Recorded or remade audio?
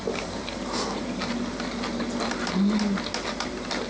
recorded